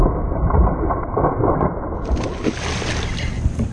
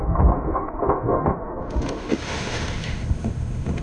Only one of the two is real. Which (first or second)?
first